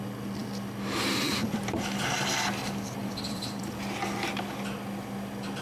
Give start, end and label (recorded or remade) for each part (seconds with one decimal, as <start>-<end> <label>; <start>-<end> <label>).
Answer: 0.0-3.0 recorded; 3.0-3.6 remade; 3.6-5.6 recorded